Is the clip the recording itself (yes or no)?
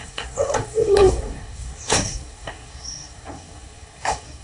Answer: no